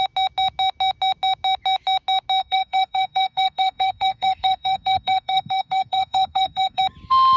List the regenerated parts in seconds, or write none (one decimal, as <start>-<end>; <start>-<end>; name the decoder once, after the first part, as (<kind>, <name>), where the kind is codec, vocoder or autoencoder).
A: 2.4-6.8 (codec, SNAC)